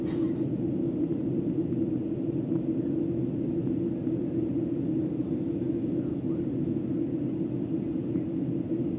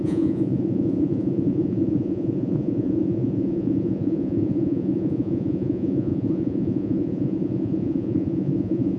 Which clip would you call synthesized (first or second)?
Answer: second